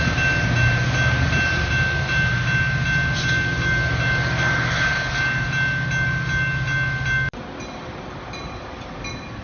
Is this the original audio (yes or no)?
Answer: yes